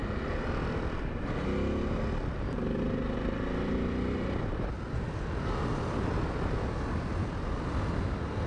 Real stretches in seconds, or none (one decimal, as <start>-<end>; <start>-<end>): 0.0-8.5